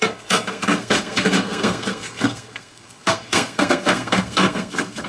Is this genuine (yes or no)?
no